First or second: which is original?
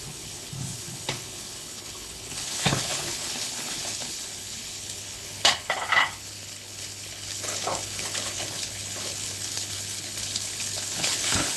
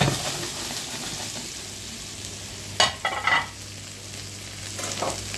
second